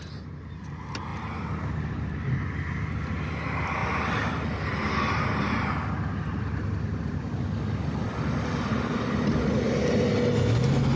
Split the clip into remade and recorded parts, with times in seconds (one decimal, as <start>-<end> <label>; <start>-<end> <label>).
0.0-11.0 recorded